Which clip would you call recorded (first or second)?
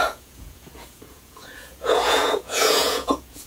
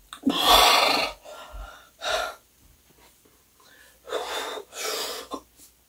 second